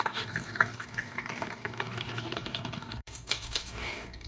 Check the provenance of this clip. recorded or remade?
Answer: remade